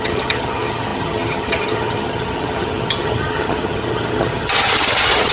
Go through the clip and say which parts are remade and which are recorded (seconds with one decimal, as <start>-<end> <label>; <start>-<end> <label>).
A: 0.0-5.3 remade